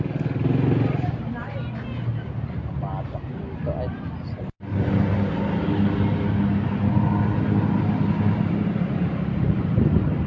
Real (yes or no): yes